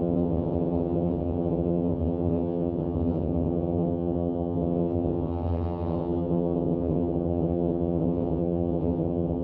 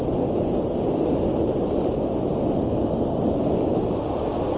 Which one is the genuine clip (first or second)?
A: second